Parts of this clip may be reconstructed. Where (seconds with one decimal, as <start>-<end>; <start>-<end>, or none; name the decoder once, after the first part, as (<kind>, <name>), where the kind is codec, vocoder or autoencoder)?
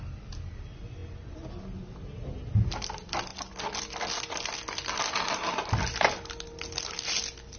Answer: none